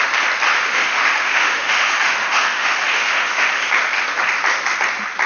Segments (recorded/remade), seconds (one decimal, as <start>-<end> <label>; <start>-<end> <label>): 0.0-0.5 recorded; 0.5-3.7 remade; 3.7-5.3 recorded

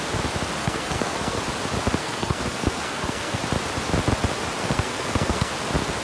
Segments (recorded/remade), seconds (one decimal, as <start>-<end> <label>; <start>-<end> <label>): 0.0-0.6 recorded; 0.6-1.4 remade; 1.4-2.0 recorded; 2.0-3.4 remade; 3.4-4.6 recorded; 4.6-5.5 remade; 5.5-6.0 recorded

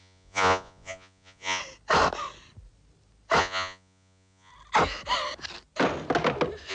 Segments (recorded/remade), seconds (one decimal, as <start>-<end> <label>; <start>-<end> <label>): 0.0-1.6 remade; 1.6-3.4 recorded; 3.4-4.5 remade; 4.5-6.7 recorded

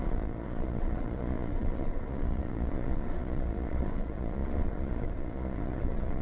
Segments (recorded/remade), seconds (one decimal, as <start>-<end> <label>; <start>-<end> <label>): 0.0-6.2 remade

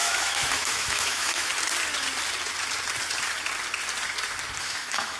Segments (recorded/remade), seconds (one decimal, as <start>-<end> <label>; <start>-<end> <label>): 0.0-1.5 remade; 1.5-4.6 recorded; 4.6-5.2 remade

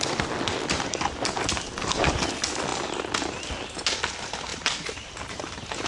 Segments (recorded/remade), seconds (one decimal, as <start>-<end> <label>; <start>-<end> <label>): 0.0-4.5 recorded; 4.5-5.9 remade

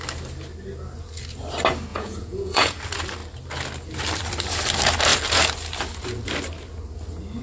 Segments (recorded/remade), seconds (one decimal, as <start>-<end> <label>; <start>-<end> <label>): 0.0-1.9 recorded; 1.9-2.8 remade; 2.8-7.4 recorded